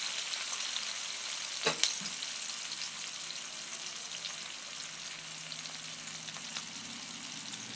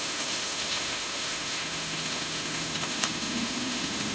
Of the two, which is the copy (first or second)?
second